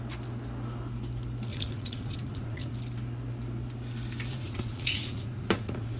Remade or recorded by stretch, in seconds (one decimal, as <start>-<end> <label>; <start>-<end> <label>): 0.0-1.5 recorded; 1.5-2.7 remade; 2.7-4.3 recorded; 4.3-6.0 remade